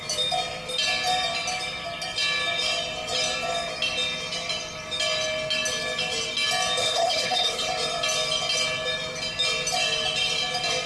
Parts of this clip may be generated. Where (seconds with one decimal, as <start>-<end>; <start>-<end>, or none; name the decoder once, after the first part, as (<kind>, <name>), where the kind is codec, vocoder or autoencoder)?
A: 6.8-7.7 (codec, HILCodec)

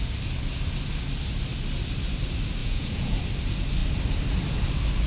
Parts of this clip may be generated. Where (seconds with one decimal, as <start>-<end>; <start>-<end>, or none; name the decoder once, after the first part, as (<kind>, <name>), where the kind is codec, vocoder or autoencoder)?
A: 2.6-3.2 (vocoder, Vocos)

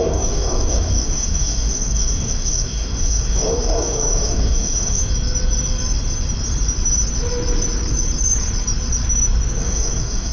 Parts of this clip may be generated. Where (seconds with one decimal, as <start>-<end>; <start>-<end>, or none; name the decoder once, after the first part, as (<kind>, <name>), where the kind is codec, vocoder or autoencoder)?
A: 0.0-5.0 (codec, DAC); 9.6-10.3

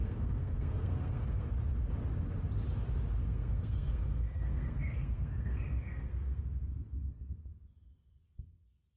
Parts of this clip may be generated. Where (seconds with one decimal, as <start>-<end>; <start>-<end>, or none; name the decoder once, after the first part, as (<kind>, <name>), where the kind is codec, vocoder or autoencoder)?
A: 0.0-1.5 (codec, SNAC); 3.2-6.4

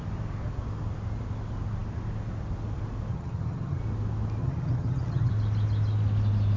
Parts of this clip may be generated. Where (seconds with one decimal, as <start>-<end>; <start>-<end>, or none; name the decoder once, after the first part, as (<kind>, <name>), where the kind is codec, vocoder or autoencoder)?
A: 3.1-3.8 (vocoder, HiFi-GAN); 4.4-5.3

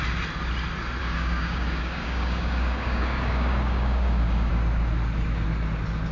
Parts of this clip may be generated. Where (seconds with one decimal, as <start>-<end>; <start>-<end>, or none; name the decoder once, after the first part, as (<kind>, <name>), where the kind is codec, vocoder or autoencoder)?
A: 1.0-4.5 (codec, DAC)

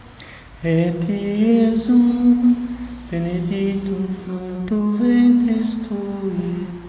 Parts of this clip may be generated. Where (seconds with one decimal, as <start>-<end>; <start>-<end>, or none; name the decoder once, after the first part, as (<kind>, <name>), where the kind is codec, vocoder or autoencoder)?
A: 4.2-5.0 (codec, DAC)